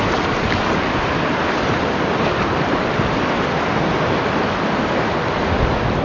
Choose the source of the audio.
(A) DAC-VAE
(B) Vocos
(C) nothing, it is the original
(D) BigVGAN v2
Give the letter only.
C